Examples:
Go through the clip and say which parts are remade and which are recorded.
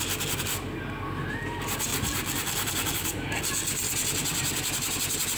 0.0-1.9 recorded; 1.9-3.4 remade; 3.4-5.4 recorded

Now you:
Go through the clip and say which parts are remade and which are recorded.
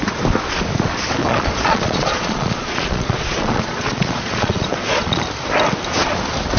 0.0-1.2 recorded; 1.2-5.2 remade; 5.2-6.6 recorded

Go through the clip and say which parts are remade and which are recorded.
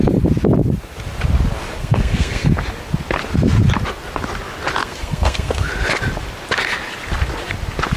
0.0-1.8 recorded; 1.8-2.5 remade; 2.5-4.8 recorded; 4.8-5.7 remade; 5.7-8.0 recorded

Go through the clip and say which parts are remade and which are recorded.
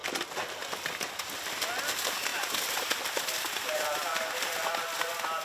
0.0-2.3 recorded; 2.3-4.7 remade; 4.7-5.4 recorded